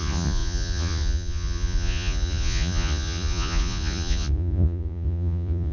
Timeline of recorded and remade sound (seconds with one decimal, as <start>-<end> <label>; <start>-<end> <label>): 0.0-5.7 remade